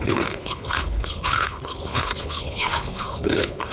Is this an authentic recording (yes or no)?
no